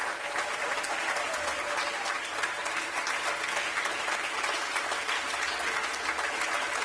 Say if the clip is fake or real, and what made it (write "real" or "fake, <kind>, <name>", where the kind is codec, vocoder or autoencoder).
real